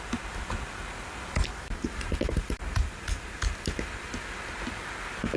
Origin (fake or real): real